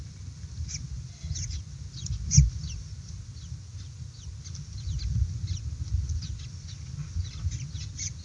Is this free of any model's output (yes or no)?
yes